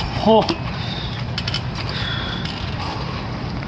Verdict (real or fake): fake